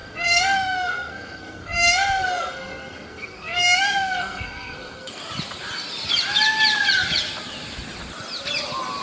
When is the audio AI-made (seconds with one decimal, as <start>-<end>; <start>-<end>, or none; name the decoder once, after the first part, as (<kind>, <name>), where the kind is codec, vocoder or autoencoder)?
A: 0.0-5.2 (codec, SNAC)